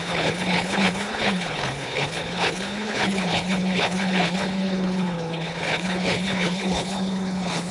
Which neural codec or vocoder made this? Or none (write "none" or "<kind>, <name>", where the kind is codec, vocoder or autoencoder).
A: codec, HILCodec